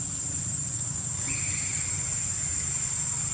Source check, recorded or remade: remade